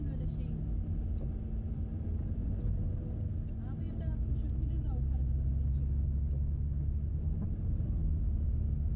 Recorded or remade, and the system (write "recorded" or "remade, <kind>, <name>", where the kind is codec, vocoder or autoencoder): recorded